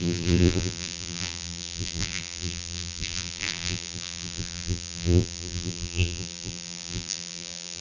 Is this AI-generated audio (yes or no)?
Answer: yes